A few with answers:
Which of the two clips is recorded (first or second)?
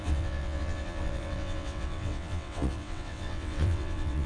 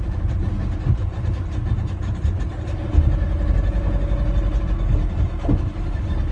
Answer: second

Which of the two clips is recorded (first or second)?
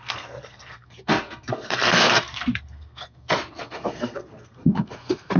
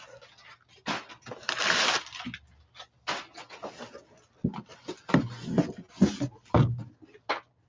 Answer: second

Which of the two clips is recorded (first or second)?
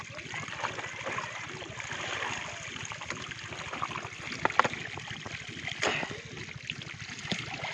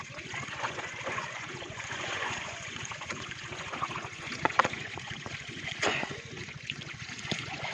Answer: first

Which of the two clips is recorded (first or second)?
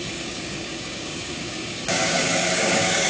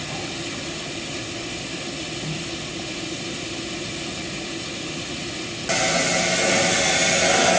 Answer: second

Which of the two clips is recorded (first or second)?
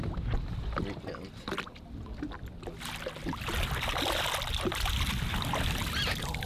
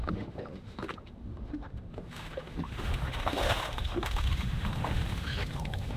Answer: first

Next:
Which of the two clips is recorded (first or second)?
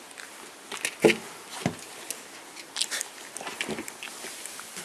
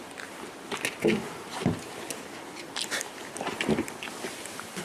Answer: first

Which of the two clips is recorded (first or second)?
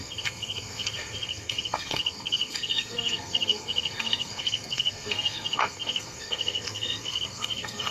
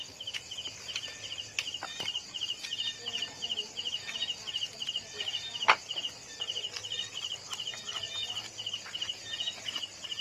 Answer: second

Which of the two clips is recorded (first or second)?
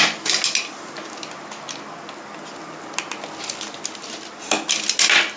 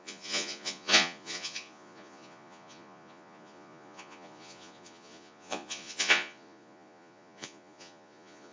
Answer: first